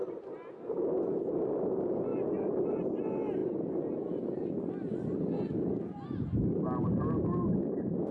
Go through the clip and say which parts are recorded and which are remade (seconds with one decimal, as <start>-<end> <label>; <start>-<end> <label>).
0.0-2.1 recorded; 2.1-2.6 remade; 2.6-8.1 recorded